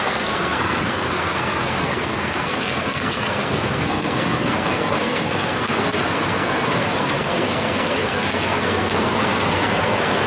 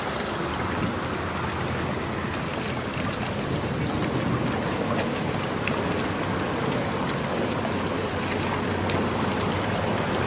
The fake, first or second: first